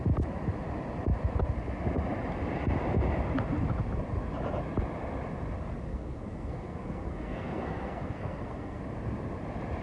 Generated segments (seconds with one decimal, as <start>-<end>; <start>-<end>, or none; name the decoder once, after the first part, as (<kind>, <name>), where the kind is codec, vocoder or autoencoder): 5.9-8.8 (codec, SNAC)